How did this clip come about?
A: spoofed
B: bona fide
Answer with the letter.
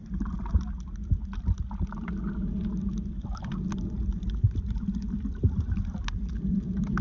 B